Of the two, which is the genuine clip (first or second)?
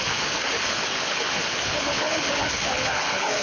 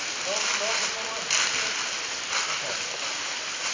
second